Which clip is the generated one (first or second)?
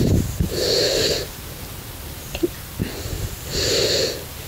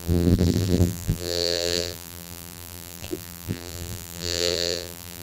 second